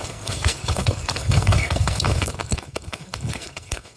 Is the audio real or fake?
fake